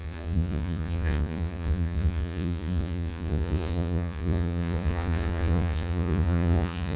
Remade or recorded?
remade